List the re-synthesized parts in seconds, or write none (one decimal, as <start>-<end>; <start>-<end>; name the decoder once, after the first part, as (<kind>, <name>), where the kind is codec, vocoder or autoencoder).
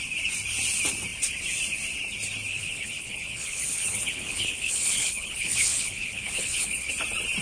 2.5-6.9 (codec, HILCodec)